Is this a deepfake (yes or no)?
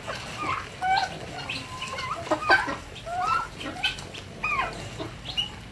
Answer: no